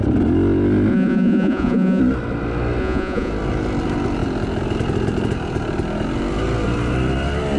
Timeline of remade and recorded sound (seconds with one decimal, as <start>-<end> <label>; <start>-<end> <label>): 0.0-0.9 recorded; 0.9-2.0 remade; 2.0-2.8 recorded; 2.8-3.3 remade; 3.3-7.6 recorded